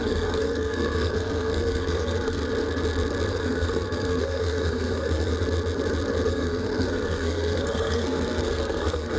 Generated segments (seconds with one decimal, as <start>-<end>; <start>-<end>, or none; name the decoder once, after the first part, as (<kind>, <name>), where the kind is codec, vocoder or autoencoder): 0.0-2.4 (codec, SNAC); 3.3-5.3; 6.3-9.2